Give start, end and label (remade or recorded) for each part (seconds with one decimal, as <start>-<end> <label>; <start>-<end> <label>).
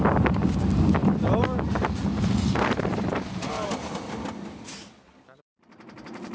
0.0-6.3 recorded